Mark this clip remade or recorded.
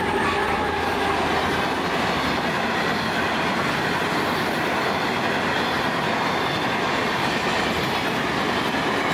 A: recorded